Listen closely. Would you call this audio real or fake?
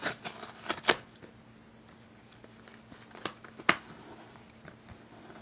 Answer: real